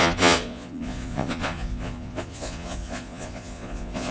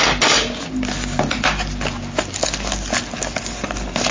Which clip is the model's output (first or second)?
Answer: first